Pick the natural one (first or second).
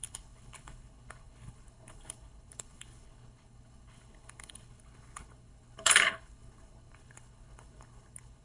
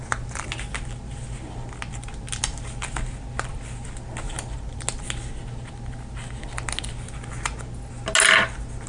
second